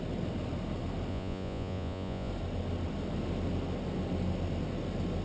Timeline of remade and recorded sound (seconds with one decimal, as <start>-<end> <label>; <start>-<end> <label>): 0.0-1.1 recorded; 1.1-2.3 remade; 2.3-5.2 recorded